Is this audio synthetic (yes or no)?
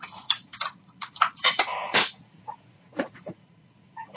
yes